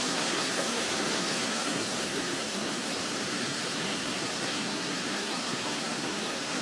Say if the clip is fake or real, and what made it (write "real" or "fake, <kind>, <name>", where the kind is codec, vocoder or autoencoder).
fake, codec, SNAC